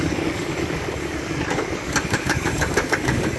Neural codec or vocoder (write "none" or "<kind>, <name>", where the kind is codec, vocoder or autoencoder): codec, DAC